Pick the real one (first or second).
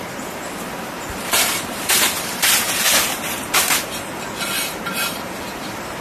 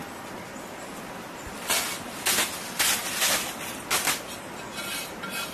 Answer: second